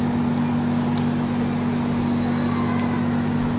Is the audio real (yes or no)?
yes